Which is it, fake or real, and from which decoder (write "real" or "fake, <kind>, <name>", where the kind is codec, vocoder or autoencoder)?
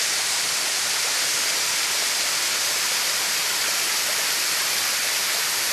real